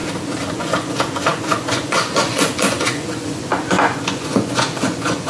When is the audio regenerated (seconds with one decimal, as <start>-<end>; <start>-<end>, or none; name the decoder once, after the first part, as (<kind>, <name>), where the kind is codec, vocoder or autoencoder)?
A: 0.5-5.3 (vocoder, Vocos)